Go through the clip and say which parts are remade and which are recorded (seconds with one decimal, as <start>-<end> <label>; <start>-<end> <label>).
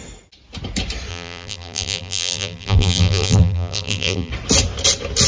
0.0-1.1 recorded; 1.1-4.3 remade; 4.3-5.3 recorded